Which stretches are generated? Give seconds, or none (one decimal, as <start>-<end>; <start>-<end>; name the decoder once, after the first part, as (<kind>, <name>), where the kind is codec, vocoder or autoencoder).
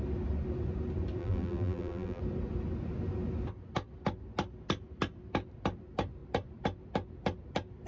1.2-2.2 (vocoder, BigVGAN v2)